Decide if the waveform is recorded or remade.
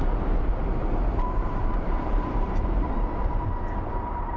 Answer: remade